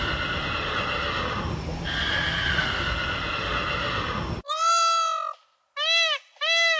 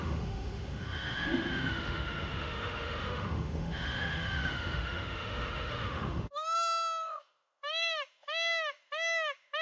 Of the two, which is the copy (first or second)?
second